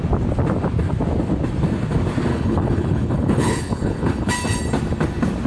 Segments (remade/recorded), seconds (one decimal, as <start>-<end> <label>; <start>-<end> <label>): 0.0-2.3 recorded; 2.3-4.3 remade; 4.3-5.5 recorded